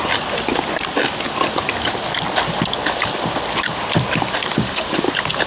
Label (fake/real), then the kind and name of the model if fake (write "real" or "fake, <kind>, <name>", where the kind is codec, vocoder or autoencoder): real